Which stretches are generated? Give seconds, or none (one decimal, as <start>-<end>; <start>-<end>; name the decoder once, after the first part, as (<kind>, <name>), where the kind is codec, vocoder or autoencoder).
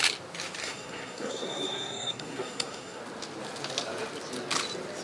0.6-3.0 (codec, SNAC)